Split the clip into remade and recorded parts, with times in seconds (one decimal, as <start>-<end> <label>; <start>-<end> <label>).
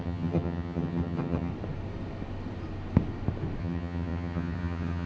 0.0-1.5 remade; 1.5-3.6 recorded; 3.6-5.1 remade